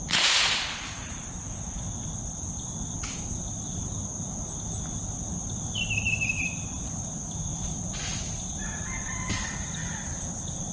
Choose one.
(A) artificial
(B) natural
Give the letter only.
B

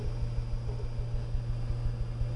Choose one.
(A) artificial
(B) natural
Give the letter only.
B